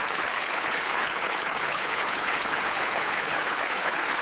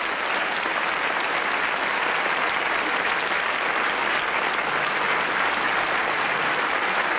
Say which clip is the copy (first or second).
first